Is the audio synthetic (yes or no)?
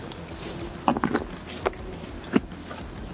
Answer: no